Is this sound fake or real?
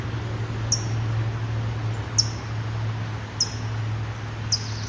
real